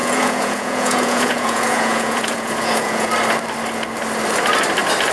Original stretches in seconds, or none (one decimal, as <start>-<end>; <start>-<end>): 3.1-5.1